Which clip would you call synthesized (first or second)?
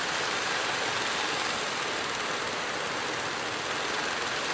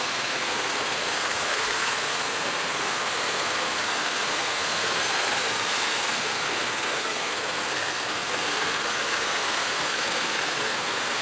second